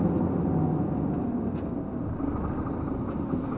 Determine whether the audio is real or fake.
real